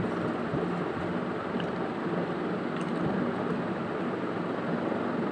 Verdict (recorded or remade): recorded